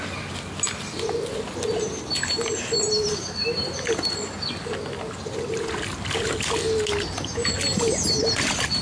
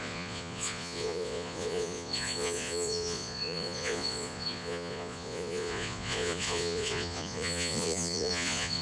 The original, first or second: first